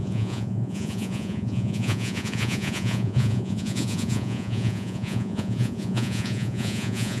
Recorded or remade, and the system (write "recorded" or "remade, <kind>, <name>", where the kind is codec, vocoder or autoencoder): remade, vocoder, Vocos